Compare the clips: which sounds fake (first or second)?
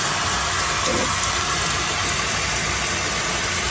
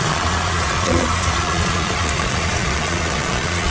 second